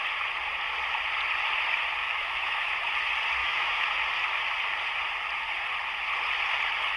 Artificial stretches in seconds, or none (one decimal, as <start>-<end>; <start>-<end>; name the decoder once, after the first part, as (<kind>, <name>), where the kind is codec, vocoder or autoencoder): 2.0-2.7 (autoencoder, DAC-VAE); 3.4-3.9